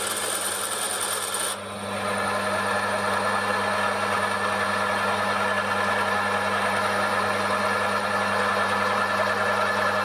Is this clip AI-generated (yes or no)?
no